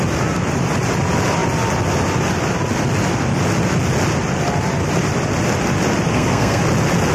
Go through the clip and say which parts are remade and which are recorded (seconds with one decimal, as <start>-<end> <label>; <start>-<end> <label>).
0.0-6.1 recorded; 6.1-6.6 remade; 6.6-7.1 recorded